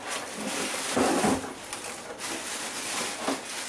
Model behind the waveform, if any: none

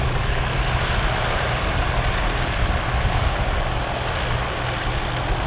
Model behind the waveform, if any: none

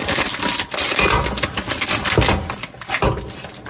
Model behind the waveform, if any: none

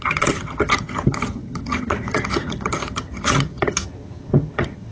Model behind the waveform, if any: vocoder, HiFi-GAN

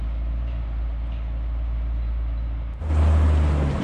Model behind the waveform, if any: none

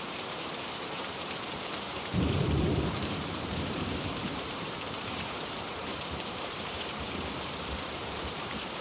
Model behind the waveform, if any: vocoder, BigVGAN v2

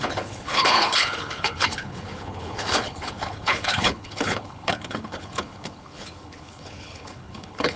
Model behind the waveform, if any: codec, HILCodec